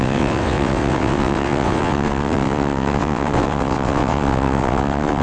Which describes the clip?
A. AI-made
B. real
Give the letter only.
A